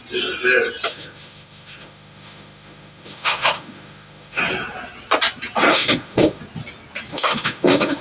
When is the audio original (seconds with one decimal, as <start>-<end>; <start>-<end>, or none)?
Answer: 0.0-0.9; 4.4-5.7; 6.4-7.1